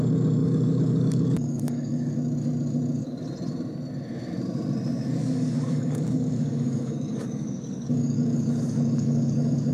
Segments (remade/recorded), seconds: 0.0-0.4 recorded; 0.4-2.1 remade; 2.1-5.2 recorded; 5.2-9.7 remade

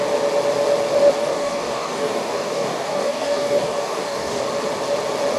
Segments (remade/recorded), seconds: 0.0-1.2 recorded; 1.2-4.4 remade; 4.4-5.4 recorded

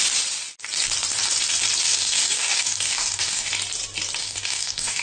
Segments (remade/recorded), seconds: 0.0-1.8 recorded; 1.8-3.5 remade; 3.5-4.2 recorded; 4.2-5.0 remade

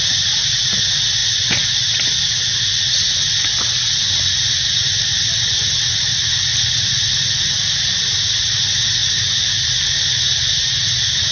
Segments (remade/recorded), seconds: 0.0-11.3 recorded

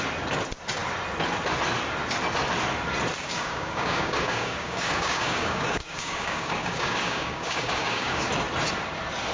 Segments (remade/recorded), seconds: 0.0-3.2 recorded; 3.2-8.3 remade; 8.3-9.3 recorded

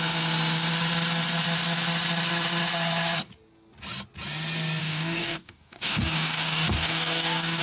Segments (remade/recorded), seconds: 0.0-4.8 recorded; 4.8-7.6 remade

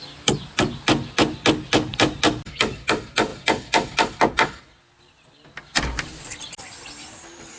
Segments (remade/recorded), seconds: 0.0-7.6 recorded

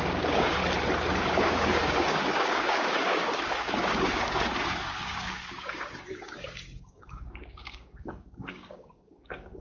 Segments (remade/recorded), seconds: 0.0-0.6 remade; 0.6-1.1 recorded; 1.1-9.6 remade